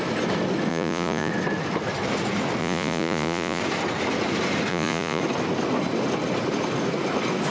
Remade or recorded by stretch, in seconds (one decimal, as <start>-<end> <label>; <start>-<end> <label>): 0.0-0.7 recorded; 0.7-1.3 remade; 1.3-2.6 recorded; 2.6-3.6 remade; 3.6-4.7 recorded; 4.7-5.2 remade; 5.2-7.5 recorded